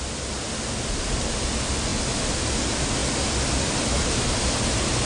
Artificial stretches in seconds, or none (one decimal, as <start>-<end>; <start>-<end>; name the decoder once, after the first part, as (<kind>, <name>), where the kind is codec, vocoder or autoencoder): none